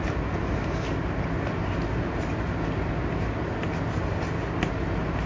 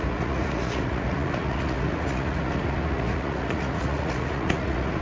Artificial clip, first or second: second